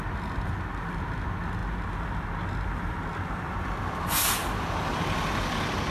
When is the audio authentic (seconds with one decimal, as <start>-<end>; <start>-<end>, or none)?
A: 0.0-5.9